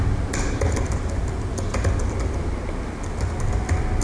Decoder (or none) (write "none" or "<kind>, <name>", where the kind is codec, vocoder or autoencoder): none